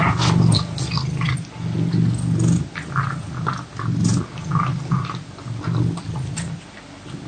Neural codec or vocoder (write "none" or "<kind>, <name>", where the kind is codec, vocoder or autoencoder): none